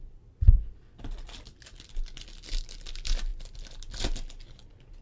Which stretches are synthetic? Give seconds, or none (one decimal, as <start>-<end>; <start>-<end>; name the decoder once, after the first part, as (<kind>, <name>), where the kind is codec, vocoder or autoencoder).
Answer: none